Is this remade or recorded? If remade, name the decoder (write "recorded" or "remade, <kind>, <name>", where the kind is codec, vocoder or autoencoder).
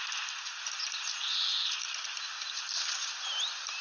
recorded